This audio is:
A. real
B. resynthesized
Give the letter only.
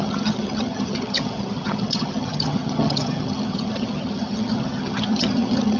B